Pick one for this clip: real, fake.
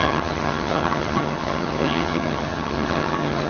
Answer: fake